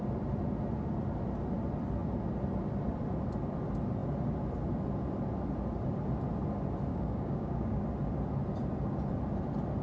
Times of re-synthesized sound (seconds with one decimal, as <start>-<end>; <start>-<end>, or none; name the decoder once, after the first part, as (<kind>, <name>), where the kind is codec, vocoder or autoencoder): 6.9-7.8 (codec, DAC)

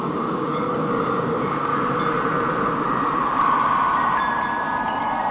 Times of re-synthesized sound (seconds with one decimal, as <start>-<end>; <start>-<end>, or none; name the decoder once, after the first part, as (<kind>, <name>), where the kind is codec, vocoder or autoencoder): 0.0-1.7 (codec, DAC)

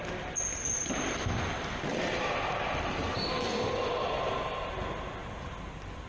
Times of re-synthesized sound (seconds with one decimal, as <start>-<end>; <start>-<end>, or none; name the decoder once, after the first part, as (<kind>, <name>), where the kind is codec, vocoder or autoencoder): none

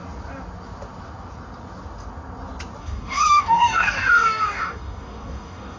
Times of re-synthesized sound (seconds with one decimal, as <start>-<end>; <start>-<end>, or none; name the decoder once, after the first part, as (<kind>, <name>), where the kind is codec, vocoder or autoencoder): 2.8-5.8 (codec, DAC)

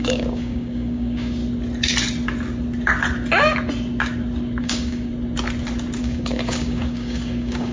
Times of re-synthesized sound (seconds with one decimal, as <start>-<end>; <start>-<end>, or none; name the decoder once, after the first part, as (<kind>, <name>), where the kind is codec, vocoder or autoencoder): 0.0-1.4 (codec, DAC); 4.6-5.1; 6.0-7.7